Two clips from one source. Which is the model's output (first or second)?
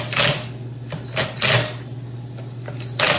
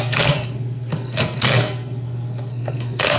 second